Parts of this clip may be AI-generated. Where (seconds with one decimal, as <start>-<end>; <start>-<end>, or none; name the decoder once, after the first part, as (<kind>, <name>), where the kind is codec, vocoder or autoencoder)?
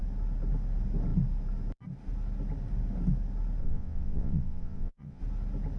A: 3.6-5.2 (vocoder, WaveNeXt)